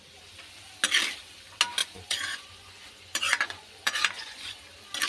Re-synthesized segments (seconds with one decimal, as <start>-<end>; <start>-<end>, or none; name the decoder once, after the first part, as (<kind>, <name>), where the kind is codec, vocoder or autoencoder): 1.8-4.6 (vocoder, Vocos)